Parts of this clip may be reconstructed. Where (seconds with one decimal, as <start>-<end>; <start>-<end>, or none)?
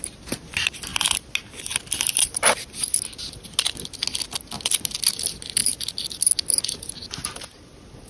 none